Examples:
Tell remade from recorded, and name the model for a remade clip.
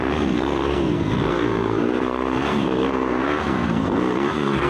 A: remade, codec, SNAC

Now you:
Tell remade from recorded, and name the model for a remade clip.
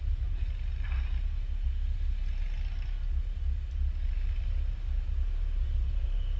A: recorded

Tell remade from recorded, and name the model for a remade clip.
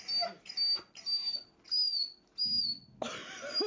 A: recorded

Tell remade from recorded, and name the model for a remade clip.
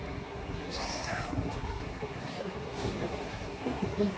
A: remade, codec, SNAC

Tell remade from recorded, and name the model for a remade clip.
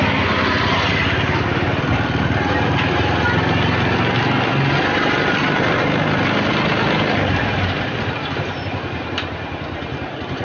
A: recorded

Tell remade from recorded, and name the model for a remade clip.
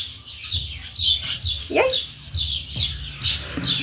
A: recorded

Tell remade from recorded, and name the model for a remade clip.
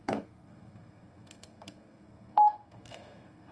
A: remade, codec, SNAC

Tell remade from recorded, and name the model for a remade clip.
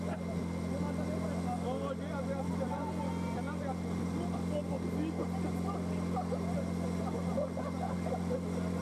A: recorded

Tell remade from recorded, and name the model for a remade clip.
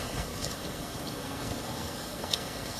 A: remade, codec, SNAC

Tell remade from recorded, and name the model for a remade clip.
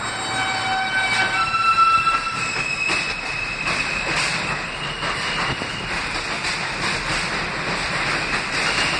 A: recorded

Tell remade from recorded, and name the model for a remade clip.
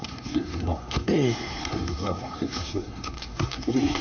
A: remade, codec, SNAC